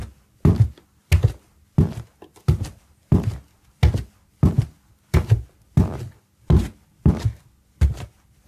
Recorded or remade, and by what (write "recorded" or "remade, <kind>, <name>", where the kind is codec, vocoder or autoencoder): recorded